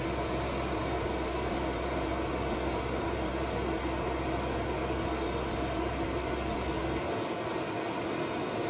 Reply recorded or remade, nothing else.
recorded